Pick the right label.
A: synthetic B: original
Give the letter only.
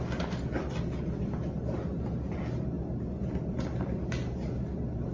B